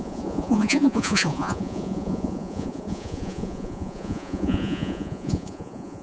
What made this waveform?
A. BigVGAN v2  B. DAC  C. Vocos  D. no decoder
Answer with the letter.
C